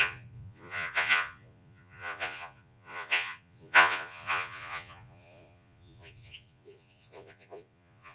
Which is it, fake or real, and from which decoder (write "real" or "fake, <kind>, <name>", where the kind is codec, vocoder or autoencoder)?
fake, vocoder, Vocos